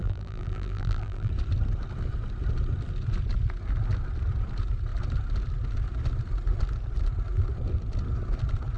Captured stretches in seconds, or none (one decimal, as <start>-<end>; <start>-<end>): 1.3-8.8